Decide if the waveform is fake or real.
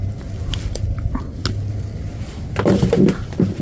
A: real